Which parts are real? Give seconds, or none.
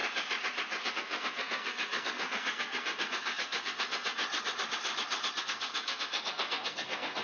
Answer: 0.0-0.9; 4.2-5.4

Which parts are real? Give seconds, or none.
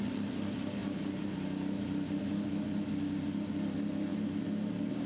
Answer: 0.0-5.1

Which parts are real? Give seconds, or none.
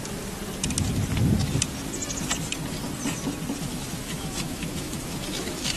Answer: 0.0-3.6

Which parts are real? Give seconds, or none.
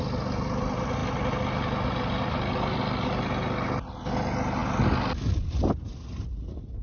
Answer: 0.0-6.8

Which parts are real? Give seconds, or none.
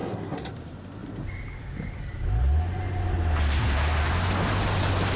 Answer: 0.5-5.2